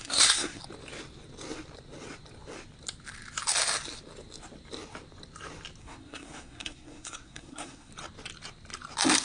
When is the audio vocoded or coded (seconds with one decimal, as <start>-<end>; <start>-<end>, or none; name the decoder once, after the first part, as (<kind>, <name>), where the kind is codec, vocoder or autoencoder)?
0.0-0.6 (codec, SNAC); 5.8-7.9